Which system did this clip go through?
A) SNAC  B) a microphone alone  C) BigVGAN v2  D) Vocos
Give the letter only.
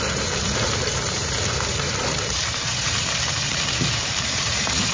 C